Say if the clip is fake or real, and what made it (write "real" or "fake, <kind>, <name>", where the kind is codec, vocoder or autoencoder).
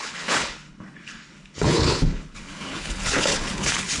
fake, codec, HILCodec